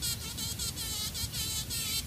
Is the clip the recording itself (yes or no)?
yes